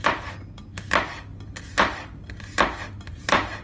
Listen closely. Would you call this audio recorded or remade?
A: recorded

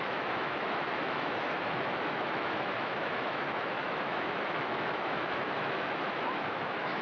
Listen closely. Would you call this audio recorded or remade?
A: remade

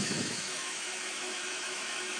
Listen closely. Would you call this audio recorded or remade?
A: remade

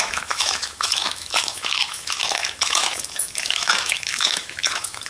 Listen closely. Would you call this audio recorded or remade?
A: remade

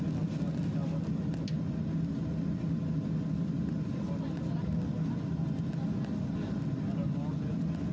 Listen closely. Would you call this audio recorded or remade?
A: recorded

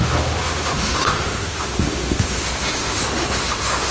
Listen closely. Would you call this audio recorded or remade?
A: remade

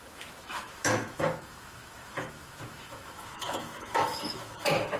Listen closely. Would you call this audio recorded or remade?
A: remade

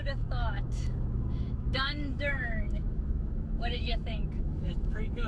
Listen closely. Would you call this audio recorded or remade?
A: remade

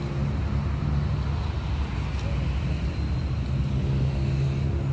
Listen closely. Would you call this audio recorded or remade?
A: recorded